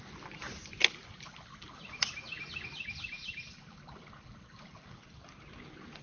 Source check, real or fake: real